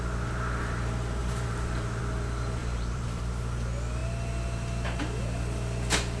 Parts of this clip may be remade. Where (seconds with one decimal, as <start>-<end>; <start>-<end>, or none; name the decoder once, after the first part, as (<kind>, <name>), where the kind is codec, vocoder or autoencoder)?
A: 1.2-2.0 (vocoder, BigVGAN v2); 2.6-3.2